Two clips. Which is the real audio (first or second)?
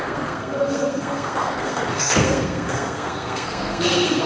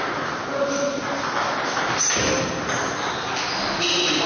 second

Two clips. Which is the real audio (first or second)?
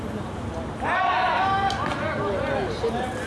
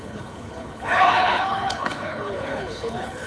first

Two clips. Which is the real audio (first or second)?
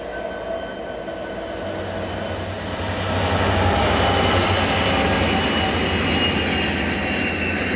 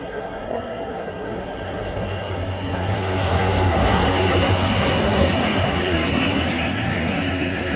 first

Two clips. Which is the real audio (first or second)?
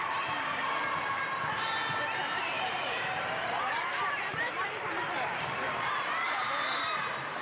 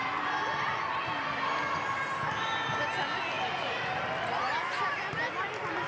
second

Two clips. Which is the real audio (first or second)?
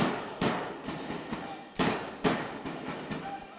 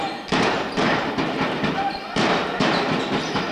first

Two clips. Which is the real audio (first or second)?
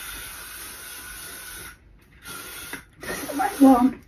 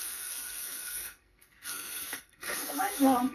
first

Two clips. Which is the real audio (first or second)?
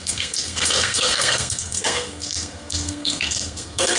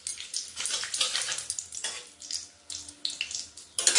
second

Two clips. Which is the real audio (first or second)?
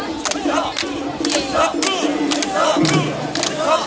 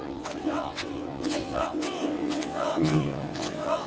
first